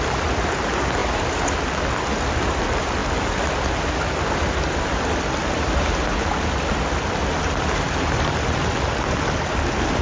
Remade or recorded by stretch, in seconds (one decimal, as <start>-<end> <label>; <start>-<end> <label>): 0.0-10.0 recorded